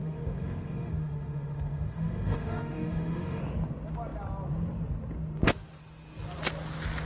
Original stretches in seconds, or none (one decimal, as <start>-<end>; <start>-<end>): 3.4-7.1